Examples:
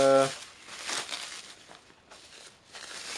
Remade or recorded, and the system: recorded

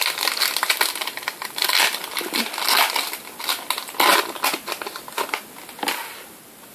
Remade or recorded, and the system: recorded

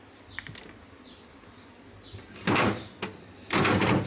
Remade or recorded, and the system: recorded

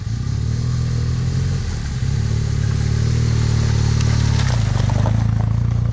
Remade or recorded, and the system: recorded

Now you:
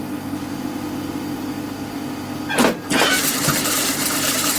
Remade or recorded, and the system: recorded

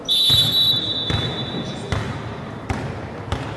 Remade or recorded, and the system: recorded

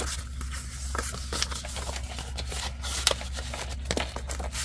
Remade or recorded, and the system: recorded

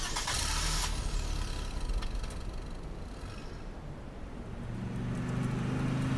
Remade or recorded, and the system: recorded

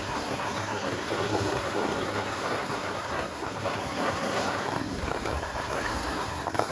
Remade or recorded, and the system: remade, codec, SNAC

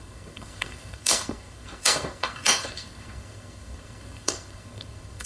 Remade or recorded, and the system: remade, codec, SNAC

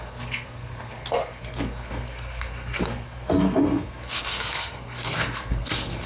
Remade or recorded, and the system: remade, codec, SNAC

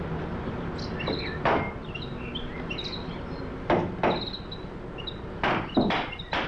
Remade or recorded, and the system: recorded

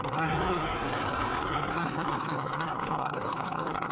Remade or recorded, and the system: remade, codec, SNAC